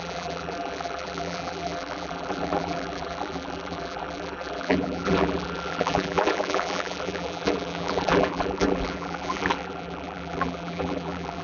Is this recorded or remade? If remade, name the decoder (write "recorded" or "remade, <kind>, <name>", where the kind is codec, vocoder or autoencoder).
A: remade, vocoder, BigVGAN v2